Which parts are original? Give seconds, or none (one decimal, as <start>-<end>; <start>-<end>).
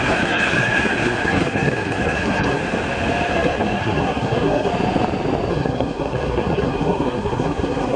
2.6-3.3; 4.7-5.5